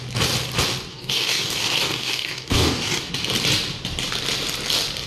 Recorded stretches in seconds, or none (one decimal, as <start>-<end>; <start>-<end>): 0.0-0.9; 3.1-5.1

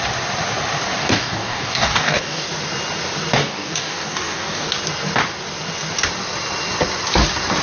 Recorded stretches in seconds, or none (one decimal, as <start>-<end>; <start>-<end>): 0.0-1.0; 2.5-3.4; 4.7-7.6

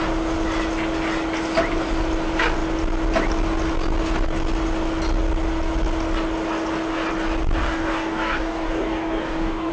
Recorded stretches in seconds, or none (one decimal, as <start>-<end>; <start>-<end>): 0.0-7.6

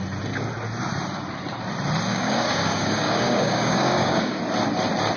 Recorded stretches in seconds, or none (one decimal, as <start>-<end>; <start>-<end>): 0.0-2.1; 4.4-5.2

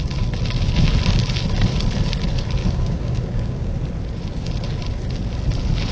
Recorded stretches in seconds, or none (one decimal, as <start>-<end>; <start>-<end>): 0.0-2.6; 3.7-5.9

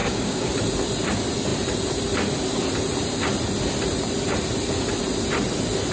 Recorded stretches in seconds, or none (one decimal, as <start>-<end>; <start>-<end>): 0.5-5.9

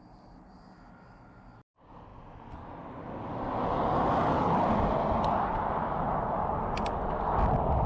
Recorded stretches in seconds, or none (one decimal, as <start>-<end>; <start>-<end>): 0.0-7.9